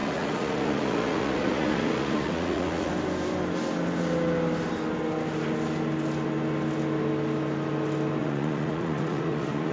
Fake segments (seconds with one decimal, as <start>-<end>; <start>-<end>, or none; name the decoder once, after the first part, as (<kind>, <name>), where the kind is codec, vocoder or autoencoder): 0.0-2.9 (vocoder, Vocos); 8.2-9.7